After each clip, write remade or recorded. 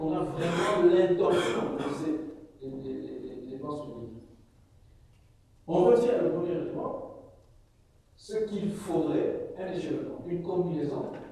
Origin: recorded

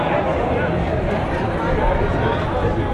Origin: recorded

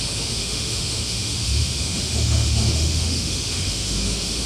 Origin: remade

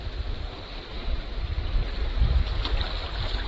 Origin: recorded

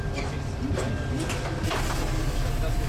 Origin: recorded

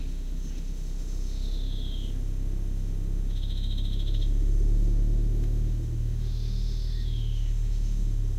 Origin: remade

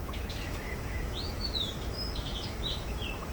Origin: remade